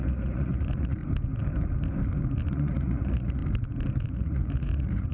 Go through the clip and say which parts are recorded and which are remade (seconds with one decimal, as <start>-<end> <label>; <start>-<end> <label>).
0.0-1.0 remade; 1.0-2.5 recorded; 2.5-3.4 remade; 3.4-4.0 recorded; 4.0-5.1 remade